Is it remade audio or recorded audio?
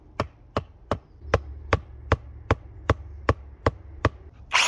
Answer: recorded